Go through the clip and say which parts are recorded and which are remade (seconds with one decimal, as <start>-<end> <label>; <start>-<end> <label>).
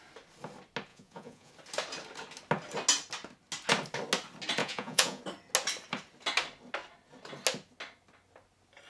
0.0-0.9 recorded; 0.9-1.5 remade; 1.5-4.6 recorded; 4.6-5.2 remade; 5.2-8.9 recorded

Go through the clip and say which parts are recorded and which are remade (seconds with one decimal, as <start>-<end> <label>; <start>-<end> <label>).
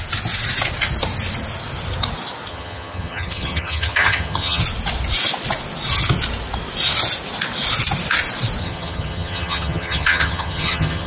0.0-2.5 recorded; 2.5-4.6 remade; 4.6-8.6 recorded; 8.6-11.1 remade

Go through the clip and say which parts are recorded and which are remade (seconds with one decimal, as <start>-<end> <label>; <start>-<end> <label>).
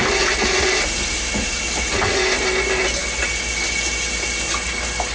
0.0-5.1 recorded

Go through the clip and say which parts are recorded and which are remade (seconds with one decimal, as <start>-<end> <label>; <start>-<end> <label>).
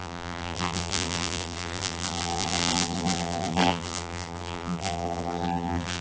0.0-6.0 remade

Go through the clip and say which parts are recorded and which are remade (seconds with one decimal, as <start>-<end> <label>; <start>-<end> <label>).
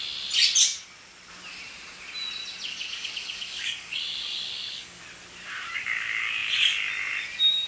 0.0-2.7 recorded; 2.7-5.0 remade; 5.0-7.7 recorded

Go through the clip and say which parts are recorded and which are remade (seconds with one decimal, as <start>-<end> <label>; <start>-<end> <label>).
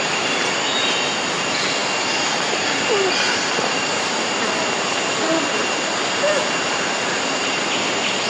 0.0-8.3 recorded